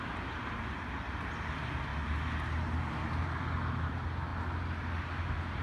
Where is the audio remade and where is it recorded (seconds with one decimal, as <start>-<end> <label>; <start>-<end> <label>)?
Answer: 0.0-5.6 recorded